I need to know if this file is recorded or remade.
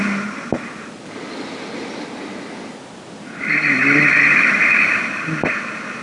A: recorded